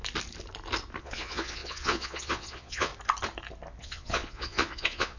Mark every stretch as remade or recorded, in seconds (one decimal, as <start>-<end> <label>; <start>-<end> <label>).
0.0-1.0 recorded; 1.0-2.9 remade; 2.9-3.8 recorded; 3.8-5.2 remade

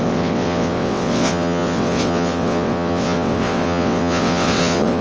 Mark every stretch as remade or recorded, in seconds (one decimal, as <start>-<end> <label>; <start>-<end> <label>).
0.0-5.0 remade